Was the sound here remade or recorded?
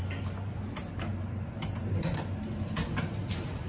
recorded